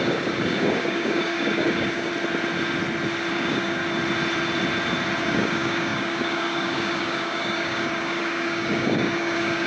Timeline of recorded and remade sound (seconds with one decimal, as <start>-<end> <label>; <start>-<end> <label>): 0.0-2.1 remade; 2.1-3.3 recorded; 3.3-3.8 remade; 3.8-5.2 recorded; 5.2-9.7 remade